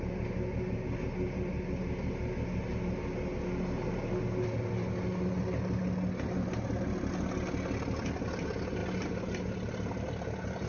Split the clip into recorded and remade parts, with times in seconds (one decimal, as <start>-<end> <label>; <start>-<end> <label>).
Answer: 0.0-10.7 recorded